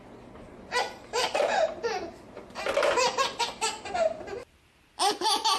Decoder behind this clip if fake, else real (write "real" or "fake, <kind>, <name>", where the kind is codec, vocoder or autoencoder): real